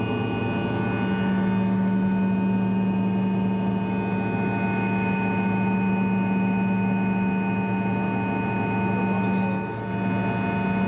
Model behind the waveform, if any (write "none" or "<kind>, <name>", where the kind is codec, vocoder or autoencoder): none